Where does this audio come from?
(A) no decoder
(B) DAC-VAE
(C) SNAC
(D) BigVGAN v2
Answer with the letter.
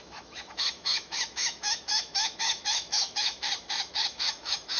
B